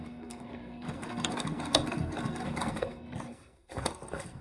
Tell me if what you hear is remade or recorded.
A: remade